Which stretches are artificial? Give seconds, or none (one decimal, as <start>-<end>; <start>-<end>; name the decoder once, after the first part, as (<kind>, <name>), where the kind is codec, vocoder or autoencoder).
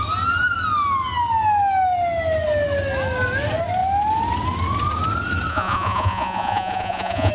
5.5-7.3 (vocoder, Vocos)